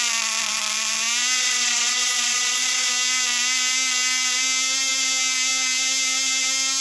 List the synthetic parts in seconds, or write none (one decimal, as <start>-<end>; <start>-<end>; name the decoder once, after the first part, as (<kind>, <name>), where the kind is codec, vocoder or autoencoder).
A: 1.4-2.9 (vocoder, WaveNeXt)